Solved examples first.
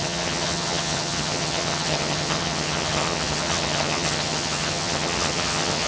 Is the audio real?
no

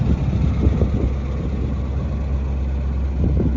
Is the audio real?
yes